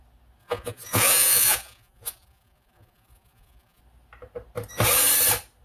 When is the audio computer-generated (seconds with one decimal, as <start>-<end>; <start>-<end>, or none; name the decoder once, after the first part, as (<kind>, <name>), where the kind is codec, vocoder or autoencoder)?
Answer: 0.4-3.8 (vocoder, Vocos)